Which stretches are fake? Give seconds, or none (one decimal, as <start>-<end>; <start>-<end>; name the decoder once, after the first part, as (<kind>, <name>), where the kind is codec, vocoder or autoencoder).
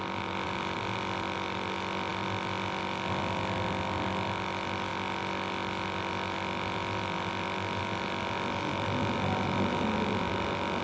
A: none